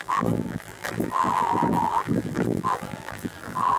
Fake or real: fake